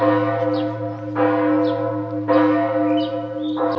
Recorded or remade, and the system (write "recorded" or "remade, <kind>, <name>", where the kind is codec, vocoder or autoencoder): recorded